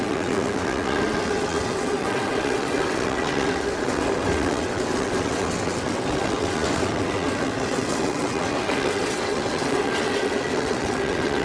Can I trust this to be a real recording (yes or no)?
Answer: no